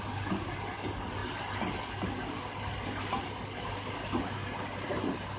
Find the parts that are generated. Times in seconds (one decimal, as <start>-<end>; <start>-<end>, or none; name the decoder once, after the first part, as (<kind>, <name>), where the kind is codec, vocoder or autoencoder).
none